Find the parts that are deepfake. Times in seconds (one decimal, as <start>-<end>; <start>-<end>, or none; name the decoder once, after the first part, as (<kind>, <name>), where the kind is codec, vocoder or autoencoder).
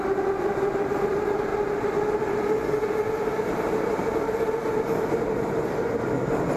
none